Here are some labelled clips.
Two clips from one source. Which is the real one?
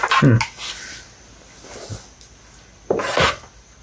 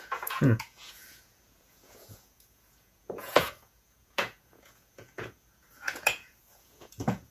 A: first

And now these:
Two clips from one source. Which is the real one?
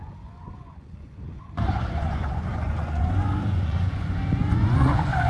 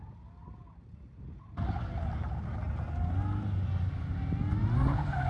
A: second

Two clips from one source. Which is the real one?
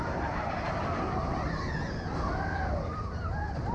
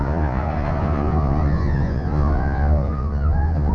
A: first